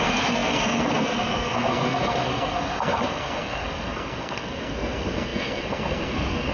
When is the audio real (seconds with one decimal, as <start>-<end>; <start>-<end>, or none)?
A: none

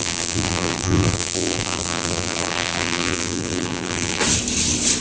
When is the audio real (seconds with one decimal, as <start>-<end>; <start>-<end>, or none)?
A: 4.2-5.0